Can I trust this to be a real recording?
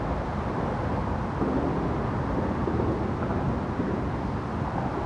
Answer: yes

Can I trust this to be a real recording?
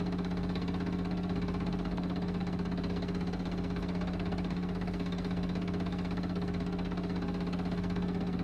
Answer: no